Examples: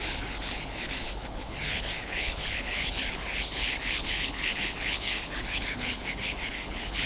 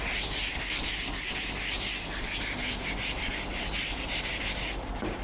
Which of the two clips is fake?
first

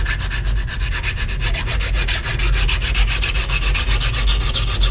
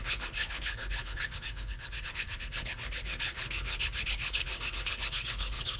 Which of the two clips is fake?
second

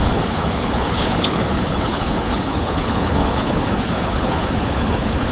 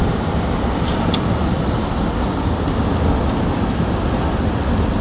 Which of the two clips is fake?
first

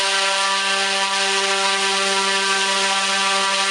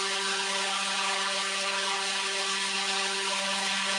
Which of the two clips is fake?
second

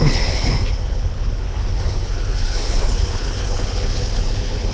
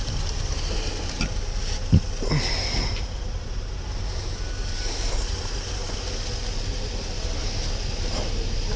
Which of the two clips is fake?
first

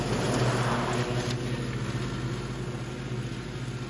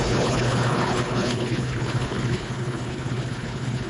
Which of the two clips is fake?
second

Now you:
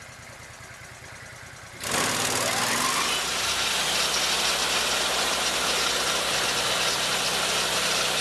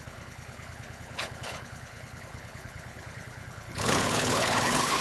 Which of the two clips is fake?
second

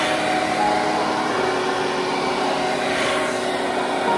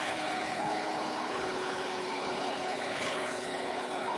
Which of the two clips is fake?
second